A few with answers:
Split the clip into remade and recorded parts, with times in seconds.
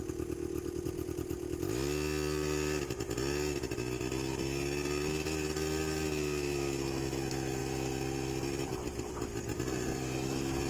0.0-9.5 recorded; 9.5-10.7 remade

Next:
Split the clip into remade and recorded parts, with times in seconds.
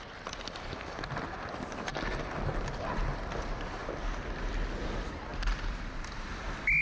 0.0-5.3 recorded; 5.3-6.3 remade; 6.3-6.8 recorded